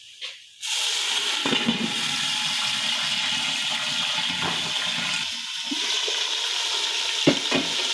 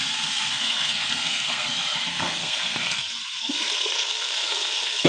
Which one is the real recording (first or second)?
first